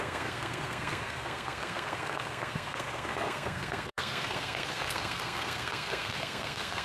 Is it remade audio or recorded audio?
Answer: remade